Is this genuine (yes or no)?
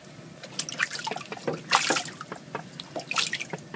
yes